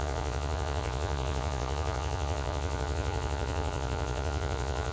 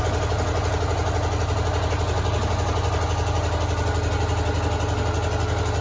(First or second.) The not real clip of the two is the first